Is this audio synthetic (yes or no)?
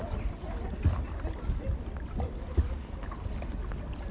no